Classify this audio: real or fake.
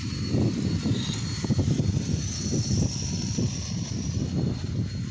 real